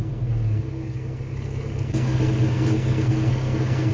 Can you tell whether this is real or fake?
fake